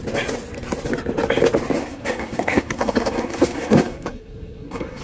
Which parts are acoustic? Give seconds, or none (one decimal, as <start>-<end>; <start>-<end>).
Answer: 0.0-1.8